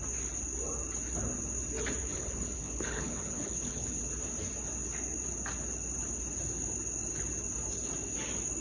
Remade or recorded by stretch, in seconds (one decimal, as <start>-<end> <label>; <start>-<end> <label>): 0.0-2.0 recorded; 2.0-4.0 remade; 4.0-8.6 recorded